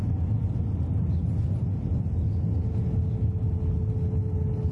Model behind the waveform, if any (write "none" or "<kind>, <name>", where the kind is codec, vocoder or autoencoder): none